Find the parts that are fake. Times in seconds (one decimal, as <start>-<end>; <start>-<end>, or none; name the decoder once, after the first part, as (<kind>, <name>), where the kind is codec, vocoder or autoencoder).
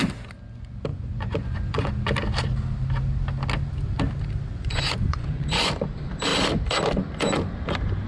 0.9-1.9 (vocoder, Vocos); 4.5-5.7